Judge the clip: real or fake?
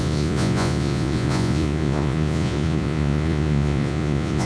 fake